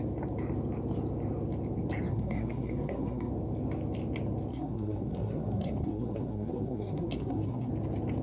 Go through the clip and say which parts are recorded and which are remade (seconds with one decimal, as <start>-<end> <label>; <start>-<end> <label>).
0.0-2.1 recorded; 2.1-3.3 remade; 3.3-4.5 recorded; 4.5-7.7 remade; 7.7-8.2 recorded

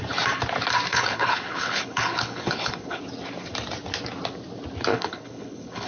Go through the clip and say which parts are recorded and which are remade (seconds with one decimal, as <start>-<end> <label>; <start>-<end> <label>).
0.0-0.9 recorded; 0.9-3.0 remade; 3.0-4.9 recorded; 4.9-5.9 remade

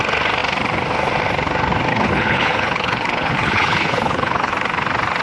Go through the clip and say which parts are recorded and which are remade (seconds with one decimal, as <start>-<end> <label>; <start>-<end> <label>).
0.0-1.9 recorded; 1.9-4.5 remade; 4.5-5.2 recorded

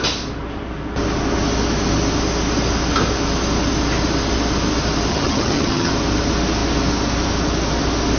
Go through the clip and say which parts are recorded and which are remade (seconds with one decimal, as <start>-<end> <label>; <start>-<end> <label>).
0.0-5.1 recorded; 5.1-5.9 remade; 5.9-8.2 recorded

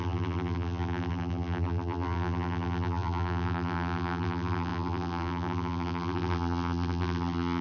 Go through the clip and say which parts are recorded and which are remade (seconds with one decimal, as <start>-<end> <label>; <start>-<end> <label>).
0.0-7.6 remade